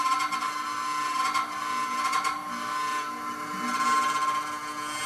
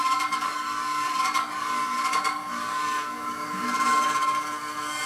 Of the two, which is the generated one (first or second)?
second